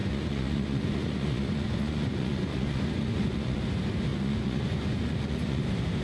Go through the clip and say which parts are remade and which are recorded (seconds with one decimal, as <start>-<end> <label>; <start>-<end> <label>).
0.0-3.6 remade; 3.6-4.1 recorded; 4.1-5.6 remade; 5.6-6.0 recorded